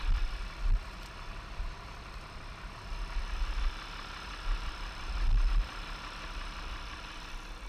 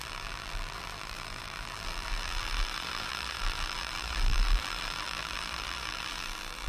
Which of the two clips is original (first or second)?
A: first